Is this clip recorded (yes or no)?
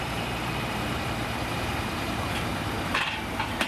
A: no